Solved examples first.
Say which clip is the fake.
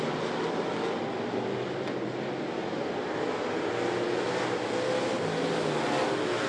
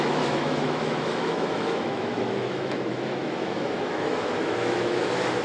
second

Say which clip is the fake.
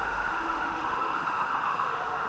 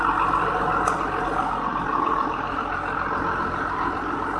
first